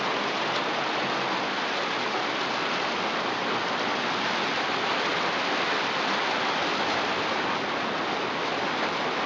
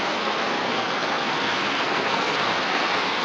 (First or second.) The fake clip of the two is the second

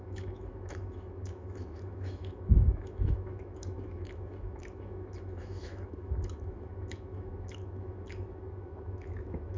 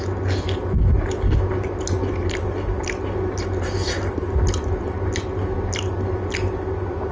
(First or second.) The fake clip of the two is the first